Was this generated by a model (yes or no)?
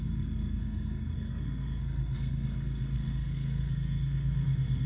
yes